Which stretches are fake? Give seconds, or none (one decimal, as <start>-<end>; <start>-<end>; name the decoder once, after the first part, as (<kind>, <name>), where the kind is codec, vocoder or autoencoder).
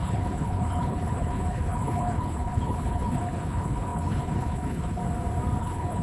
0.0-5.0 (codec, HILCodec); 5.6-6.0